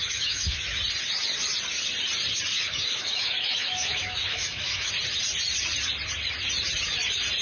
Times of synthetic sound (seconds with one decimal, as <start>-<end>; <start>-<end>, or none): 0.0-0.8; 2.5-4.9